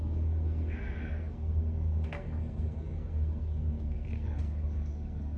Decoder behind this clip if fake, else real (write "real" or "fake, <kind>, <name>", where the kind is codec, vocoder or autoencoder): fake, codec, SNAC